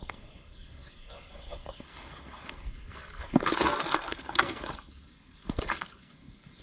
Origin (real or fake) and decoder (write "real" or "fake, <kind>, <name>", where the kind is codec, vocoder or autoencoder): fake, codec, SNAC